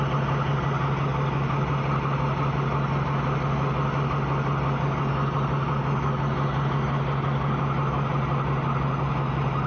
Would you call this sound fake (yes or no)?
no